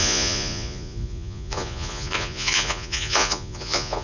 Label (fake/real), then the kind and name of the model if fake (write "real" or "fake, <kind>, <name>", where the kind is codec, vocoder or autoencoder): fake, vocoder, Vocos